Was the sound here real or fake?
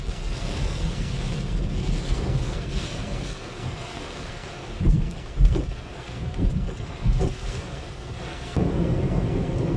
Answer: fake